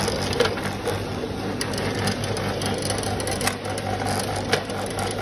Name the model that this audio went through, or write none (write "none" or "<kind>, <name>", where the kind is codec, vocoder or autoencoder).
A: none